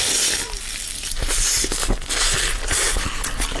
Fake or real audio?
real